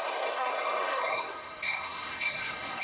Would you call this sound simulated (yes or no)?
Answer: yes